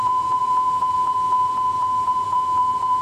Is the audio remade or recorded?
remade